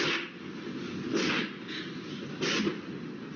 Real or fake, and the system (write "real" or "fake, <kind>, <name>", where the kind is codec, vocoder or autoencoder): real